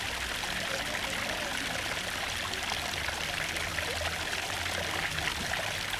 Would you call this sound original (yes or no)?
yes